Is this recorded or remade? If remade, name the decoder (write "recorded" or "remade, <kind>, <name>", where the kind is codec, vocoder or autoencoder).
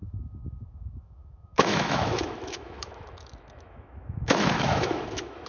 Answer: remade, autoencoder, DAC-VAE